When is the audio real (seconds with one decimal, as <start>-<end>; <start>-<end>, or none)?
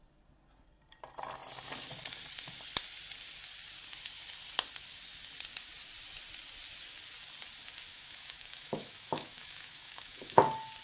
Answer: 0.0-7.9; 10.4-10.8